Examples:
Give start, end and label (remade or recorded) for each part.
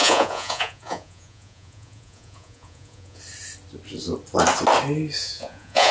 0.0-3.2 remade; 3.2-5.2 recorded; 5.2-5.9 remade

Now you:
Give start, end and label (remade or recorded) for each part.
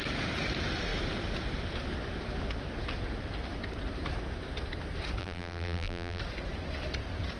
0.0-5.2 recorded; 5.2-6.2 remade; 6.2-7.4 recorded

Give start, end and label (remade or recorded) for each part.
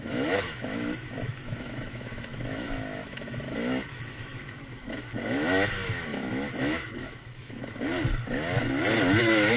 0.0-7.9 remade; 7.9-9.2 recorded; 9.2-9.6 remade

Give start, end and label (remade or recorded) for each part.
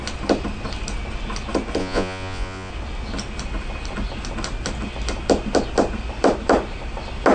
0.0-1.8 recorded; 1.8-2.7 remade; 2.7-7.3 recorded